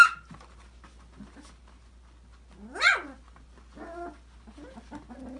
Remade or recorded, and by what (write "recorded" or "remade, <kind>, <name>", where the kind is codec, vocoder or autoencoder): recorded